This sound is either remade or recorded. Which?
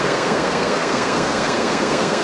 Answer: remade